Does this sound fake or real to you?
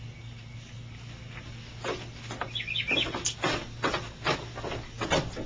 real